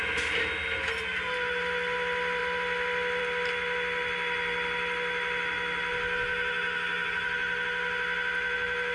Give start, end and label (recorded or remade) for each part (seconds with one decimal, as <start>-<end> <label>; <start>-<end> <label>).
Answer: 0.0-8.9 recorded